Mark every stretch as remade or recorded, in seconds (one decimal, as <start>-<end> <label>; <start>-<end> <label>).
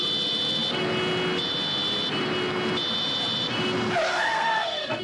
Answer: 0.0-4.1 recorded; 4.1-5.0 remade